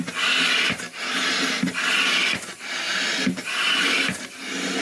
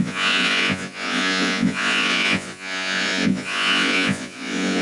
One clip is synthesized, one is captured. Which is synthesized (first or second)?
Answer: second